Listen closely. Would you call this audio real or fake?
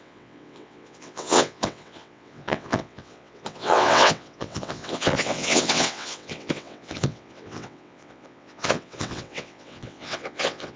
fake